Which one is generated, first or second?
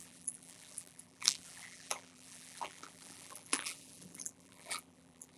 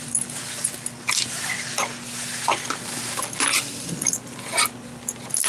first